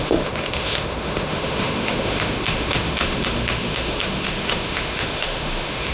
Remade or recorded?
remade